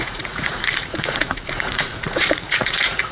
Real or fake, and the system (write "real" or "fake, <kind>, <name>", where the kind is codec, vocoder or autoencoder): fake, vocoder, Vocos